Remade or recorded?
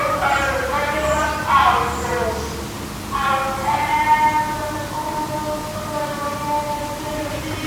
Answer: recorded